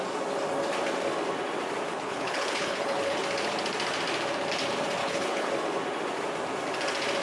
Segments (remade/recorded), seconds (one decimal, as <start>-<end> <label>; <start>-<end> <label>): 0.0-1.9 recorded; 1.9-3.2 remade; 3.2-5.0 recorded; 5.0-5.5 remade; 5.5-7.2 recorded